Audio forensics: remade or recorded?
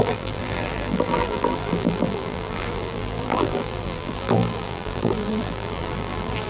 remade